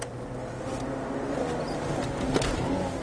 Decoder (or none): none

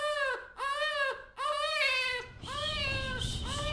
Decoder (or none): none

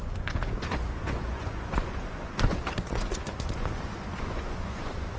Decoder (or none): vocoder, Vocos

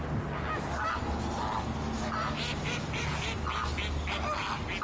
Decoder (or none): none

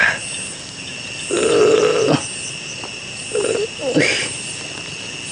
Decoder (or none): none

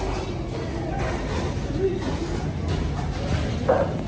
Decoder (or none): none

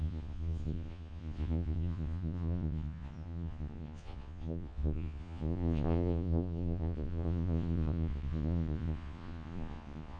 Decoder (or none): vocoder, Vocos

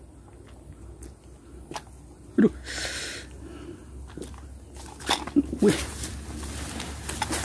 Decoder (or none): none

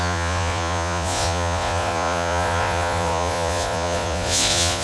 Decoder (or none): vocoder, Vocos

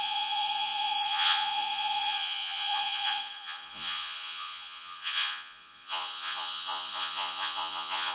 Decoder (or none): vocoder, Vocos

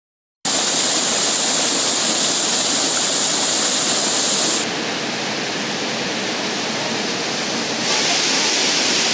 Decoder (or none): none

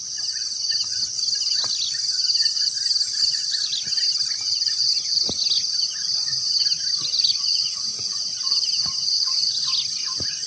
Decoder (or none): none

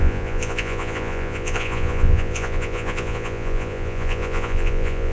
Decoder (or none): vocoder, Vocos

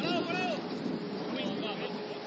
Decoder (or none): none